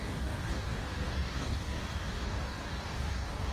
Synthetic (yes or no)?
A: yes